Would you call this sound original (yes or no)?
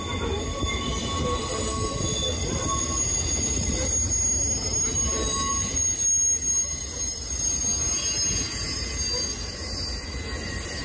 yes